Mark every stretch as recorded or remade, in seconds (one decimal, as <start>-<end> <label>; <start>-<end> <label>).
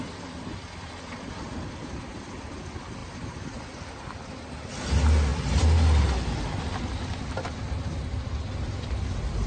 0.0-9.5 recorded